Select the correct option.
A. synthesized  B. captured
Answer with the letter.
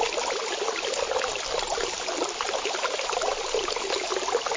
B